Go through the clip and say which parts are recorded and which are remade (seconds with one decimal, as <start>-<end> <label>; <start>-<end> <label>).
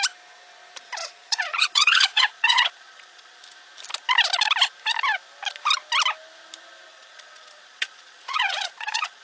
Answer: 0.0-1.0 recorded; 1.0-3.4 remade; 3.4-6.9 recorded; 6.9-9.2 remade